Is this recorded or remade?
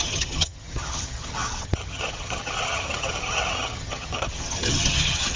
remade